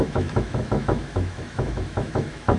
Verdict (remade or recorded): remade